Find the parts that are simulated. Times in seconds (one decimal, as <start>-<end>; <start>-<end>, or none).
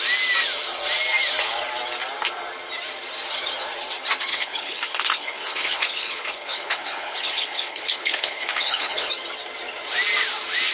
4.3-9.1